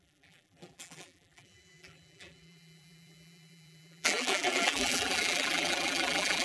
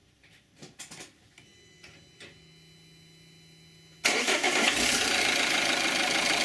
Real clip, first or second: second